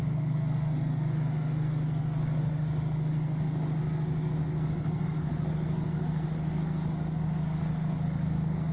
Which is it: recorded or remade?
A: remade